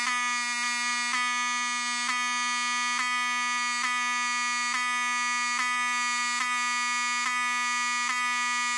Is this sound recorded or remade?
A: recorded